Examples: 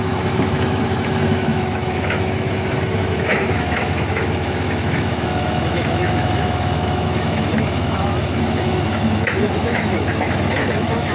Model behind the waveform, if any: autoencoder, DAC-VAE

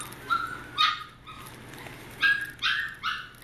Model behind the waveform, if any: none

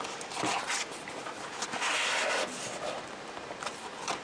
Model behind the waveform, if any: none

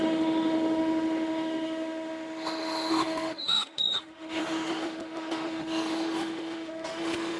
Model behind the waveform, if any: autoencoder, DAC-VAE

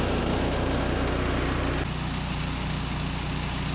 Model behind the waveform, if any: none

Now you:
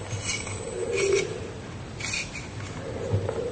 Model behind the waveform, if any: none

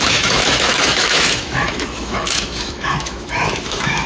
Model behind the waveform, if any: autoencoder, DAC-VAE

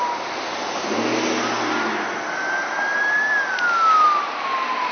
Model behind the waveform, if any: none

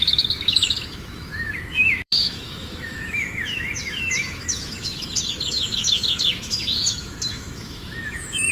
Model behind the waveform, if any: autoencoder, DAC-VAE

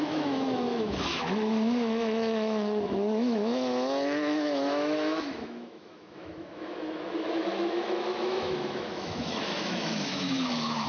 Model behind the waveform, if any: autoencoder, DAC-VAE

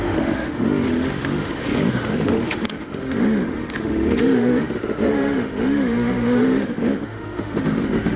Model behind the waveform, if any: autoencoder, DAC-VAE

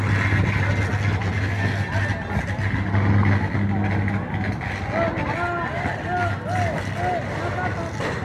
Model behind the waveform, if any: none